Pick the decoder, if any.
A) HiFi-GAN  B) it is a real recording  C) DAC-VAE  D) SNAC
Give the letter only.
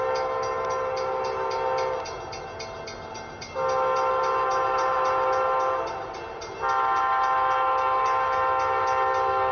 B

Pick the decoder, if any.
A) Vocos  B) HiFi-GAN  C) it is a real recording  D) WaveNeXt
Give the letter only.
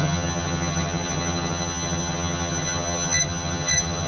B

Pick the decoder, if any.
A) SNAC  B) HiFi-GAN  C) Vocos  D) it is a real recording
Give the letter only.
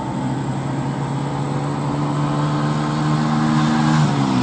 D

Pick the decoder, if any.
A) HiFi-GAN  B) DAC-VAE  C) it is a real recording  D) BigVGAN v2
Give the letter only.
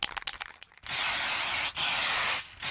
C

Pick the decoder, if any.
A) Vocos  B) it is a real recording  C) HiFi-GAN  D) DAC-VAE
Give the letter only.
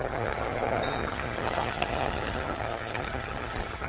C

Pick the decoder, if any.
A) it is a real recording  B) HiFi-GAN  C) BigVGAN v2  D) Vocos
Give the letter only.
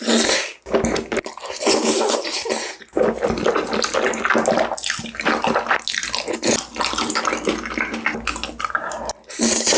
A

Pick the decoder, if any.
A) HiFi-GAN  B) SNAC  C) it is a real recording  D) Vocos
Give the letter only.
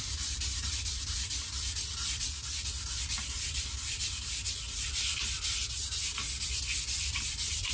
C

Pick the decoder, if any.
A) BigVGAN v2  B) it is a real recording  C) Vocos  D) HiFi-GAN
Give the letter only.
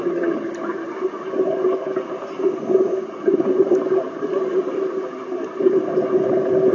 B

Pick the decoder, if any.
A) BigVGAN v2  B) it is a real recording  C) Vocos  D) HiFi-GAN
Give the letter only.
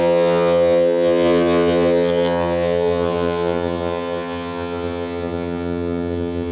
D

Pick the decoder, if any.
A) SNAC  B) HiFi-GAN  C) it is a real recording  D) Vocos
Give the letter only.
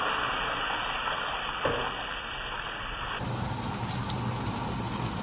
C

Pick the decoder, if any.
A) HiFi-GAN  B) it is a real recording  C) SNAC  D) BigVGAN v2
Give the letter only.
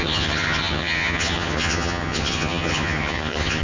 A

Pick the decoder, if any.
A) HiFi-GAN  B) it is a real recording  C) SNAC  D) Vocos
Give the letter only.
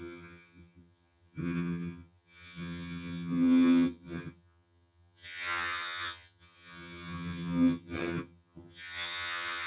A